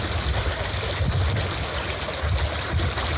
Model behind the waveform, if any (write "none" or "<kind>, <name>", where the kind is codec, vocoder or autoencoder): none